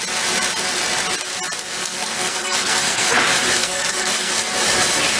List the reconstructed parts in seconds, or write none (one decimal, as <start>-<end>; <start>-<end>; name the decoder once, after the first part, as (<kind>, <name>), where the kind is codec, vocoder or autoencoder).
1.8-3.2 (codec, SNAC); 3.6-4.3